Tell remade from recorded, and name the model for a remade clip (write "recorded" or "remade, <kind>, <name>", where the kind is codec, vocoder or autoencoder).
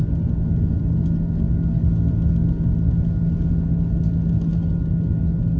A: recorded